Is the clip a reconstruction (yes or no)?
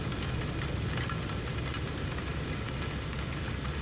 no